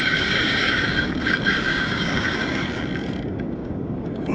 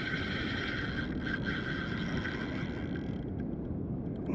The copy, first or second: first